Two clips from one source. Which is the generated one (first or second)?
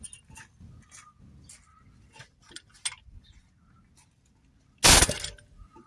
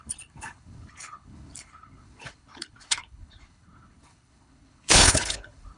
second